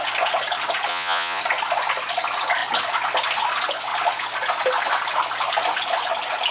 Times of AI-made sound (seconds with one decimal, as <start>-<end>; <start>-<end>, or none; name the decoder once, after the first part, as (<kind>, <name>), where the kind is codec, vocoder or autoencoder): 0.9-1.4 (vocoder, Vocos)